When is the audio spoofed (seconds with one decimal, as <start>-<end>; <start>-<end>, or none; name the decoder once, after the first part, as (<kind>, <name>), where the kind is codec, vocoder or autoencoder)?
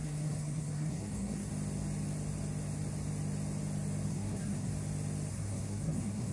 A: 0.0-1.5 (codec, SNAC); 4.1-4.7; 5.3-6.3